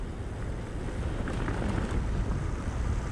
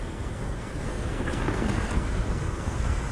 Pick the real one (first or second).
first